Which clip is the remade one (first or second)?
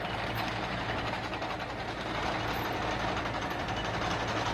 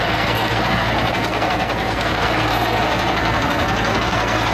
second